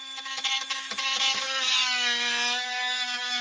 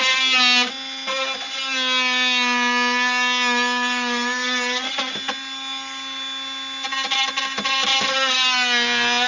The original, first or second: second